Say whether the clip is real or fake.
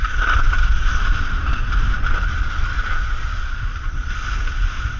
real